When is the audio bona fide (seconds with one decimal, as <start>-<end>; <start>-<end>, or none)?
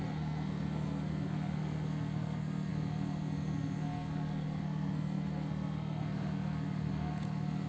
none